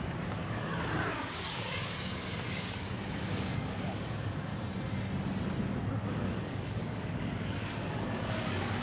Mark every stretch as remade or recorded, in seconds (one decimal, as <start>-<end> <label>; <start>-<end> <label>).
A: 0.0-4.5 remade; 4.5-6.1 recorded; 6.1-8.8 remade